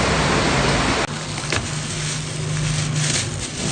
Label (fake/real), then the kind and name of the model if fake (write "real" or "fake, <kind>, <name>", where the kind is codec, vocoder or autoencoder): real